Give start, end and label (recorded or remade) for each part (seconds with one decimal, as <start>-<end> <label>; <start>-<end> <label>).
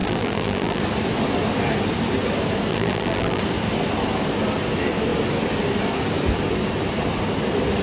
0.0-0.8 remade; 0.8-2.7 recorded; 2.7-3.4 remade; 3.4-7.8 recorded